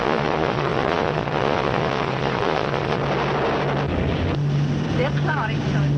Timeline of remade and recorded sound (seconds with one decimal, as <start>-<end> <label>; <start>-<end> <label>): 0.0-3.0 remade; 3.0-6.0 recorded